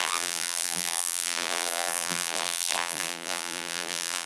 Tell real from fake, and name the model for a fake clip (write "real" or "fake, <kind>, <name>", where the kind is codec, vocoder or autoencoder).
fake, vocoder, BigVGAN v2